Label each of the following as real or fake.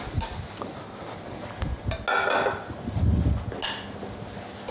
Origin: real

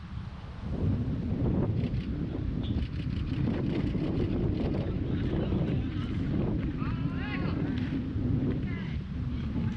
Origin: real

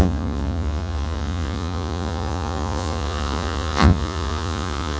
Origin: fake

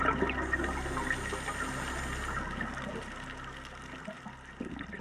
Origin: real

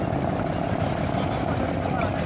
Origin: fake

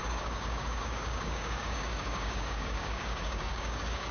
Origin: fake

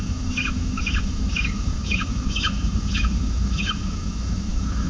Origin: fake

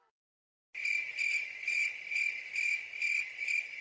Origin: real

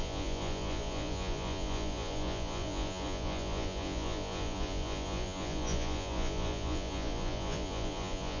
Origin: fake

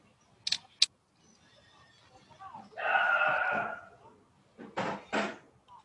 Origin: real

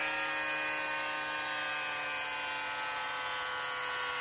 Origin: real